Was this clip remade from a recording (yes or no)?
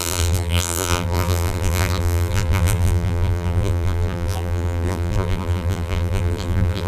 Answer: yes